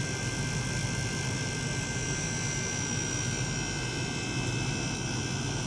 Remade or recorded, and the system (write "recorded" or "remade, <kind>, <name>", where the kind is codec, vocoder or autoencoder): recorded